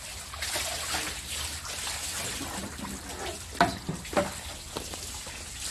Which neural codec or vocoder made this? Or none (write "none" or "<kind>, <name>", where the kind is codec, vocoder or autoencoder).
none